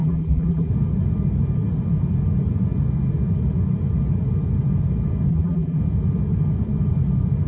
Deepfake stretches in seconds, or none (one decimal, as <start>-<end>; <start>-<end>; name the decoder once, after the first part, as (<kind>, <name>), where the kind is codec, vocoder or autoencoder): 0.0-0.7 (vocoder, BigVGAN v2); 5.3-5.8